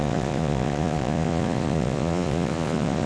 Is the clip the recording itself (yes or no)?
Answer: no